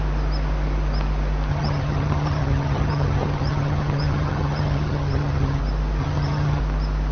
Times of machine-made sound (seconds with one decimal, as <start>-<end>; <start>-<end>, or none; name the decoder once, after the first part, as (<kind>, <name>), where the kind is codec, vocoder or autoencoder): 1.5-5.6 (vocoder, HiFi-GAN); 6.0-6.6

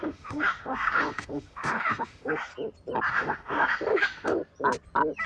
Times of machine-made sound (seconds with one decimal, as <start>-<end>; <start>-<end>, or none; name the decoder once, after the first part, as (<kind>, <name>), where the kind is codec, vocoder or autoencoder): 0.0-2.5 (autoencoder, DAC-VAE); 3.1-4.4

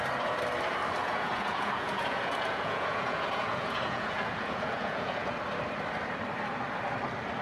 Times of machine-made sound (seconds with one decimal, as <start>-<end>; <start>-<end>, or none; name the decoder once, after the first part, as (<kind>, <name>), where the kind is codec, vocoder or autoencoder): 1.0-5.4 (vocoder, Vocos)